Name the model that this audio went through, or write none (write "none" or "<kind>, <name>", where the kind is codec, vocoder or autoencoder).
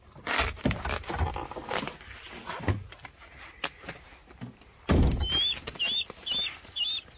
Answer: none